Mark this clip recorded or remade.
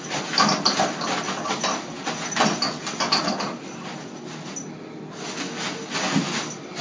recorded